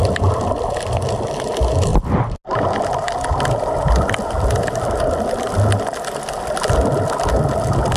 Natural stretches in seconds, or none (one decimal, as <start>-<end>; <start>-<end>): 0.0-8.0